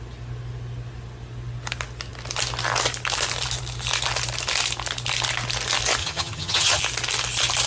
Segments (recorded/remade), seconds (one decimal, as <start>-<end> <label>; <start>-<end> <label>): 0.0-6.0 recorded; 6.0-6.8 remade; 6.8-7.7 recorded